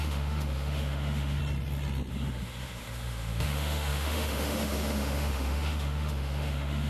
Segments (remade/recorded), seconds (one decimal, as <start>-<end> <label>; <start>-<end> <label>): 0.0-1.4 remade; 1.4-2.1 recorded; 2.1-6.9 remade